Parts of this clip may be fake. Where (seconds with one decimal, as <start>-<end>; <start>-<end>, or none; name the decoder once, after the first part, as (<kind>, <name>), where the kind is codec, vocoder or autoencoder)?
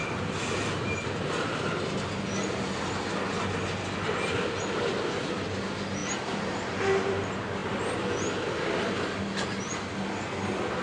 none